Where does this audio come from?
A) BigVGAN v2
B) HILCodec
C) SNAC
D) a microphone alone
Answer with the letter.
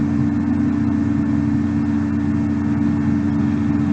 D